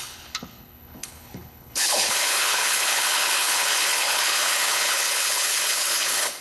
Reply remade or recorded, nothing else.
remade